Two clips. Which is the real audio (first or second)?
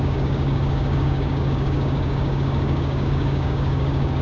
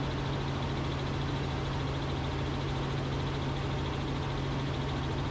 second